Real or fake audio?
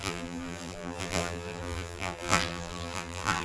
fake